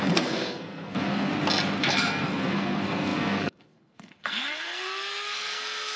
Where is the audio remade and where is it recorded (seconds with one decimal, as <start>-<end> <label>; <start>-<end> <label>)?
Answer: 0.0-1.3 remade; 1.3-1.8 recorded; 1.8-6.0 remade